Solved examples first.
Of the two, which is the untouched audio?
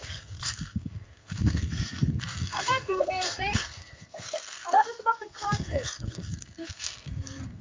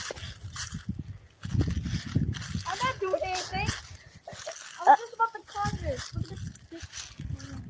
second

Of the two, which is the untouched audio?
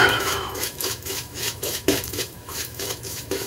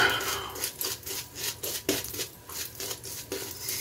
second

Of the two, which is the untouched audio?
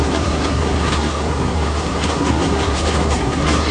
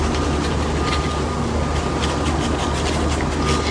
second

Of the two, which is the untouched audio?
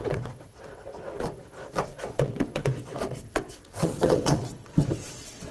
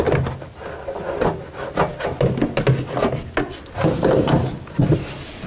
second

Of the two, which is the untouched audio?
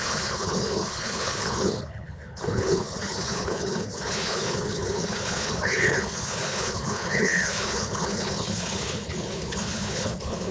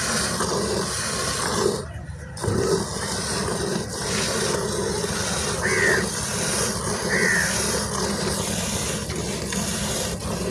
second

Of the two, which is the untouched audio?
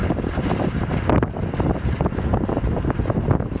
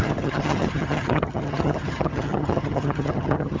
first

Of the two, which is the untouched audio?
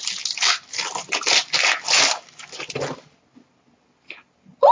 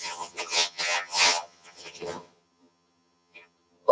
first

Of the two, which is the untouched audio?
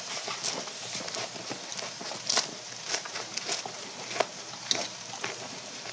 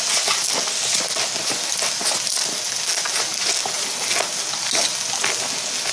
second